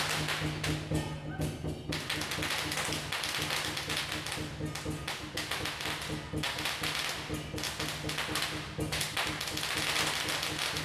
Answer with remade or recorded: recorded